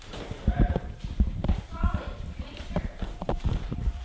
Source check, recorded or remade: remade